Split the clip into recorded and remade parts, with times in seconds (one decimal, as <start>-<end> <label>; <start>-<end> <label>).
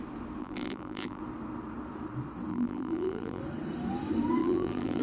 0.0-0.4 recorded; 0.4-1.2 remade; 1.2-2.5 recorded; 2.5-3.4 remade; 3.4-4.4 recorded; 4.4-5.0 remade